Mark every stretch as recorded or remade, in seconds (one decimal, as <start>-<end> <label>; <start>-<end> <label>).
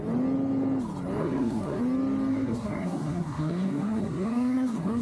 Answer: 0.0-1.2 recorded; 1.2-1.8 remade; 1.8-2.3 recorded; 2.3-5.0 remade